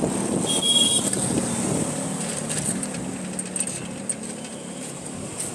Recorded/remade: recorded